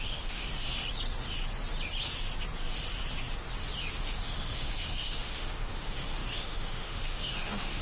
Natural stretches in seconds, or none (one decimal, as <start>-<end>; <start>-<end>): 0.5-3.9